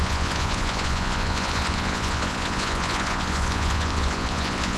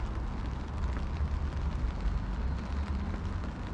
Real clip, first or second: second